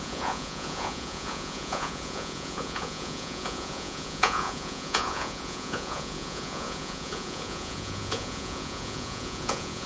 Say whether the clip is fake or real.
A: fake